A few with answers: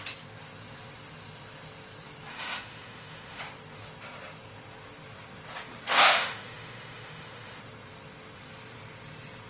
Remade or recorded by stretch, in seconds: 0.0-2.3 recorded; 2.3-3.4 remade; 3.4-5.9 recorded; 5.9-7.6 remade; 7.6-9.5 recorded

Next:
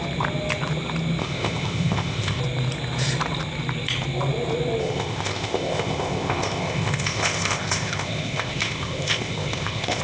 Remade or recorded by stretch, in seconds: 0.0-1.2 recorded; 1.2-2.4 remade; 2.4-4.8 recorded; 4.8-10.0 remade